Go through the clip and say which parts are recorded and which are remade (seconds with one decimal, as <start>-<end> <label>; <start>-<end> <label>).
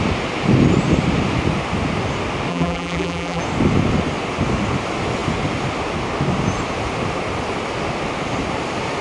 0.0-2.5 recorded; 2.5-3.4 remade; 3.4-9.0 recorded